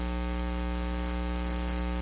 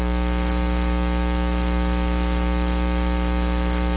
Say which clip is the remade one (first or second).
second